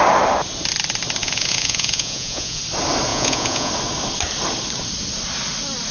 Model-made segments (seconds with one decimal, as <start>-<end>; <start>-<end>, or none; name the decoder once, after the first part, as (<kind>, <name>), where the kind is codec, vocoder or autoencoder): 1.2-2.6 (vocoder, Vocos); 3.1-3.7